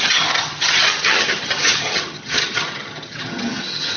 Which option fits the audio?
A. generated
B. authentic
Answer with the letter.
A